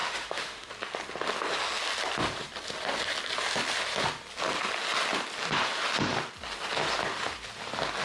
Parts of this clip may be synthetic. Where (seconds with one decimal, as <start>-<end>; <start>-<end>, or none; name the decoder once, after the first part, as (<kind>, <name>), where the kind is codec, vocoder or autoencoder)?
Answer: 0.0-0.7 (autoencoder, DAC-VAE)

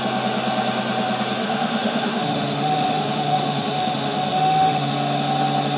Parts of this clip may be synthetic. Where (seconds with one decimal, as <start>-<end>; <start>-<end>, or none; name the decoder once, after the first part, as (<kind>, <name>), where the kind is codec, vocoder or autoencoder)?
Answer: 1.4-4.9 (autoencoder, DAC-VAE)

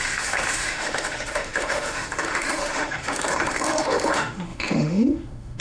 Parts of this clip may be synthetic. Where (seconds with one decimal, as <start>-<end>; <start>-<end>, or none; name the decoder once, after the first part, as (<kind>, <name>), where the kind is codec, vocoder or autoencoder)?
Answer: 0.0-5.6 (autoencoder, DAC-VAE)

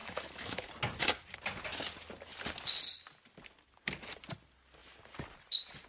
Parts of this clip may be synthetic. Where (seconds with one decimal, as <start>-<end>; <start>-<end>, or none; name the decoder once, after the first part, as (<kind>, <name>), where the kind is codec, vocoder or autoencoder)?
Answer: 0.0-0.7 (autoencoder, DAC-VAE)